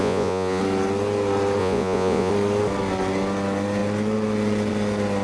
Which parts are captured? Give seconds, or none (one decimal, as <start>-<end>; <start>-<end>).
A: 0.6-1.6; 2.3-5.2